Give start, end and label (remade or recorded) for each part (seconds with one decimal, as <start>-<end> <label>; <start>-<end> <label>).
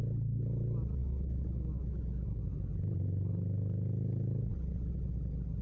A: 0.0-1.0 recorded; 1.0-2.7 remade; 2.7-5.6 recorded